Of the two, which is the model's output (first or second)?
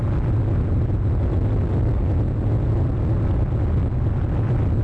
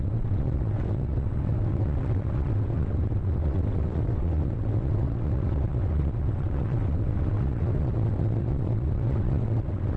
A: second